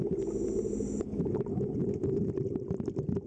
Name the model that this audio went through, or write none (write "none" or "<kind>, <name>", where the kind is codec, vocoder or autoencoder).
none